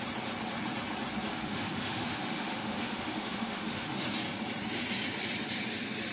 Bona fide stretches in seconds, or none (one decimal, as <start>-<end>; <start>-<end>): 0.0-1.3; 4.0-6.1